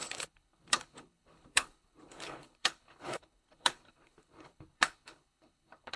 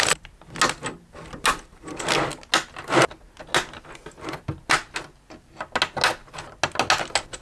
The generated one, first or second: first